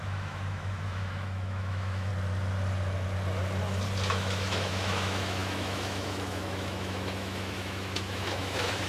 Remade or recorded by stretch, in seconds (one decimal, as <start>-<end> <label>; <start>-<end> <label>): 0.0-2.1 remade; 2.1-4.1 recorded; 4.1-8.9 remade